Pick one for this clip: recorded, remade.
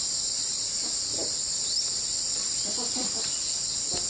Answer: recorded